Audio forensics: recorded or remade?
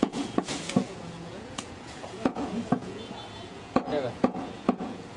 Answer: remade